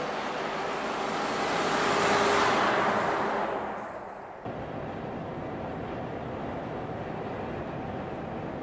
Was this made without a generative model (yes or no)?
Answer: yes